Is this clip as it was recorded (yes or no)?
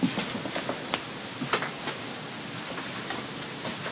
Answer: yes